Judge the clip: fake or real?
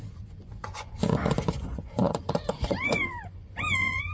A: fake